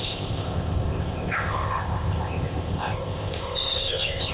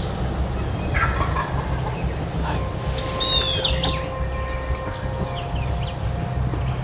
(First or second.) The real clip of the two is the second